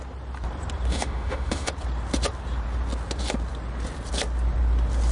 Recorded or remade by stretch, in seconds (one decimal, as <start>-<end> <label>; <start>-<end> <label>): 0.0-0.9 recorded; 0.9-1.7 remade; 1.7-5.1 recorded